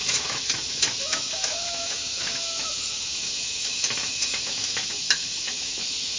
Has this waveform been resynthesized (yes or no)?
yes